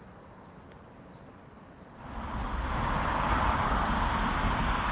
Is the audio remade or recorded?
recorded